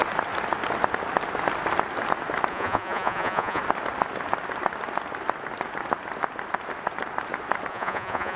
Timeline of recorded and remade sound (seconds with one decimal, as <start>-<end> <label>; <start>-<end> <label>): 0.0-2.5 recorded; 2.5-3.6 remade; 3.6-7.7 recorded; 7.7-8.4 remade